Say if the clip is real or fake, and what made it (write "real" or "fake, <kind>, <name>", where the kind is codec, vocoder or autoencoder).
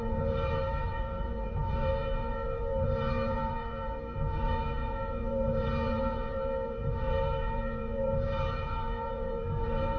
fake, vocoder, Vocos